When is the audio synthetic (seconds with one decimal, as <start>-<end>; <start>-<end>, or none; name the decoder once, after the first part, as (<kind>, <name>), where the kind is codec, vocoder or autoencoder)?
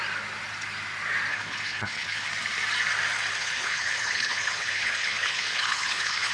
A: 1.3-2.3 (codec, HILCodec); 3.4-6.3